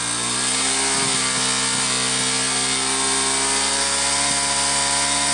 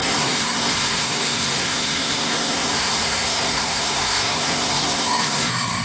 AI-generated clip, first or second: second